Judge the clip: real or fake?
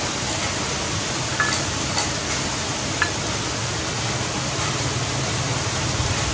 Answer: real